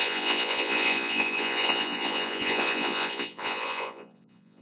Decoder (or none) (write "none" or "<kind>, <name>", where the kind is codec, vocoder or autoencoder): vocoder, Vocos